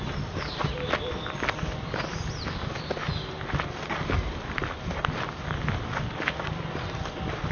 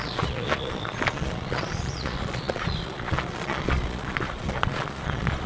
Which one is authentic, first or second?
first